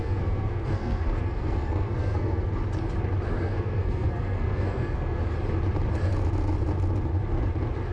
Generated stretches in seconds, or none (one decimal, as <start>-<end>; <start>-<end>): 0.0-2.5; 3.4-5.2